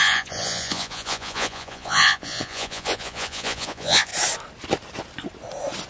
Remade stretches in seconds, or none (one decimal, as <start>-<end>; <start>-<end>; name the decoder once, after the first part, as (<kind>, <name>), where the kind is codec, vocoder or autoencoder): 0.0-4.1 (vocoder, Vocos)